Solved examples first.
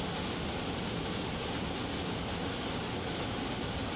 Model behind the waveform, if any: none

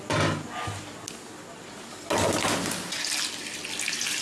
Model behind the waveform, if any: none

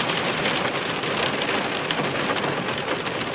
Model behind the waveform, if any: none